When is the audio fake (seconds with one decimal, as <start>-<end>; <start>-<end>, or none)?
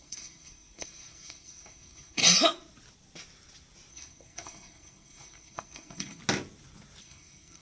0.0-2.2; 3.9-6.2; 7.0-7.6